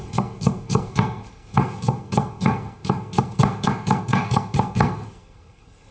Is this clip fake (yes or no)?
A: yes